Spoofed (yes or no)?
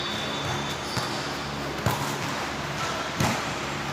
no